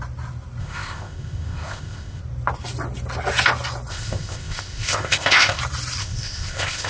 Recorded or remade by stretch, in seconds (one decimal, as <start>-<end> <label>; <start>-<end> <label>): 0.0-0.6 recorded; 0.6-2.2 remade; 2.2-3.9 recorded; 3.9-5.6 remade; 5.6-6.0 recorded; 6.0-6.9 remade